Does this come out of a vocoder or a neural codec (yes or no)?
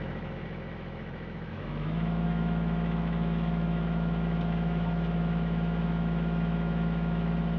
yes